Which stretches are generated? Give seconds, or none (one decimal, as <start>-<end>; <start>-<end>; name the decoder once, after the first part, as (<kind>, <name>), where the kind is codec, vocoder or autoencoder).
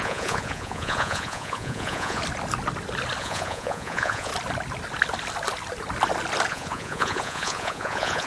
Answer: 0.0-2.2 (vocoder, Vocos); 3.2-4.3; 6.5-8.3